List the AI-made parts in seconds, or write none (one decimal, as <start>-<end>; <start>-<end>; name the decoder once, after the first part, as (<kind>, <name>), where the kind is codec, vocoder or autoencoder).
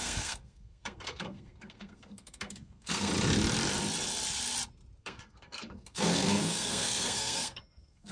0.0-3.1 (codec, SNAC); 5.0-8.1